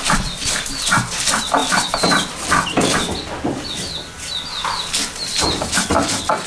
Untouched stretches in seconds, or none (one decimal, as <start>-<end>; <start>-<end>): 0.0-6.5